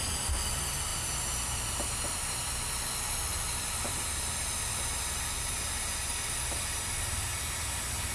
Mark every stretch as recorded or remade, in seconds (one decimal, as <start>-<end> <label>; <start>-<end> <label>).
0.0-0.9 recorded; 0.9-5.4 remade; 5.4-8.1 recorded